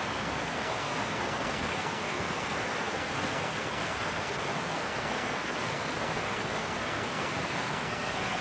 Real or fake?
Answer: fake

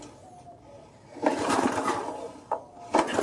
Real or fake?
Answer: real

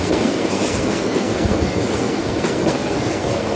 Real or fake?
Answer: fake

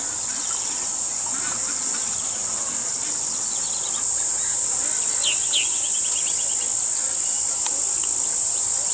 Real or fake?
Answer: real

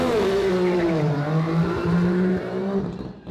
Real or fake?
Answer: fake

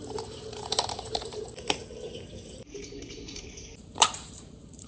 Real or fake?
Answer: fake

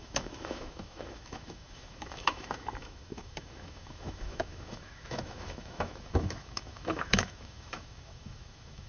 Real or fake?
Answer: fake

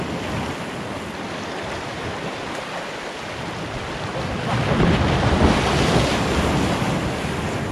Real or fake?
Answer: real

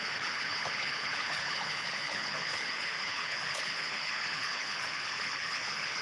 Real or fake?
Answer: fake